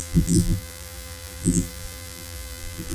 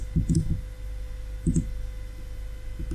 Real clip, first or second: second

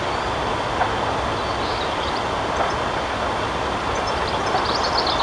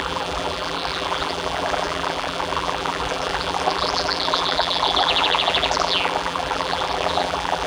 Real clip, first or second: first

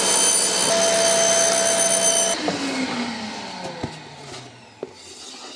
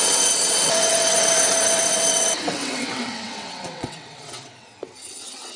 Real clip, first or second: first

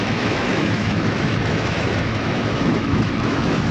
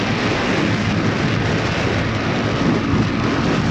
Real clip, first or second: second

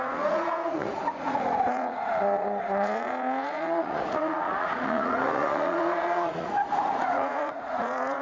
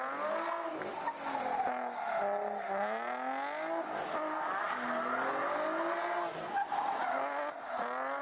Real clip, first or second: second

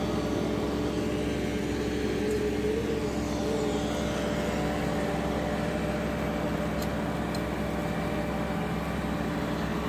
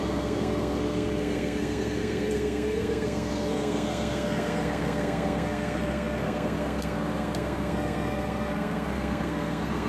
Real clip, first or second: first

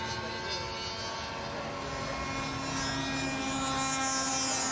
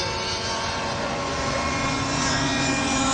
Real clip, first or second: first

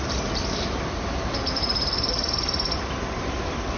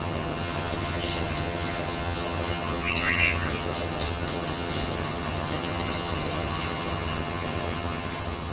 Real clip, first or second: first